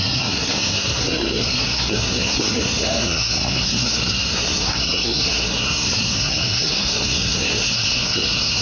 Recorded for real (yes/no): no